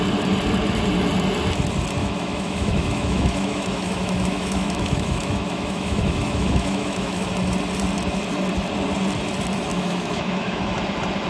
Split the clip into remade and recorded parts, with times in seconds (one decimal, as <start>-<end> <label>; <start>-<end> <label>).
0.0-2.0 recorded; 2.0-7.3 remade; 7.3-9.7 recorded; 9.7-10.8 remade; 10.8-11.3 recorded